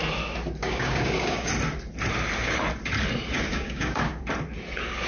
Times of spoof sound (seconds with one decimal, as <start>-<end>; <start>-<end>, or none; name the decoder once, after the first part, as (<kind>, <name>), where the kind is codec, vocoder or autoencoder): 0.6-1.5 (codec, DAC); 3.5-4.2